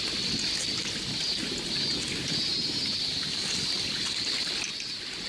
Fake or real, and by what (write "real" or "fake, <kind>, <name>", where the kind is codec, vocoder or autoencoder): real